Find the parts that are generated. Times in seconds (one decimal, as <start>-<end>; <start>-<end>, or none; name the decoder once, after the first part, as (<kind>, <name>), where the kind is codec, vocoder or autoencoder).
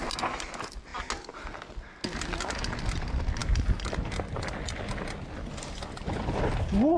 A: none